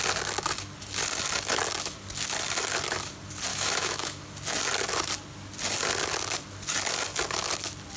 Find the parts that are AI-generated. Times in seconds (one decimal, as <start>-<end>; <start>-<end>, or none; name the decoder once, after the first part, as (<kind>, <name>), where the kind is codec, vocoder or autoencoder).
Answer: 3.5-4.2 (autoencoder, DAC-VAE)